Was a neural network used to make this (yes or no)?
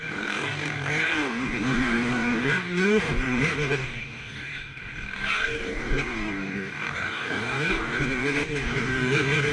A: yes